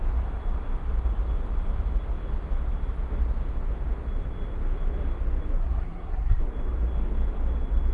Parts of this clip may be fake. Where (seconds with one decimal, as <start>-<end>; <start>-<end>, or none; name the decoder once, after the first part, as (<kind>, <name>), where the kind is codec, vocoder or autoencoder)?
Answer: 5.6-6.4 (codec, SNAC)